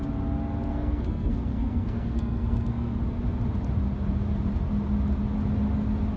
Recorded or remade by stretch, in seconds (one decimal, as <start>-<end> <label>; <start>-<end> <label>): 0.0-0.7 recorded; 0.7-3.0 remade; 3.0-6.2 recorded